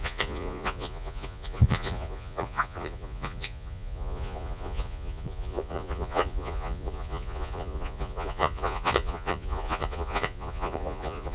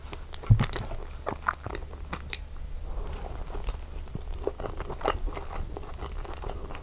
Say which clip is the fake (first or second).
first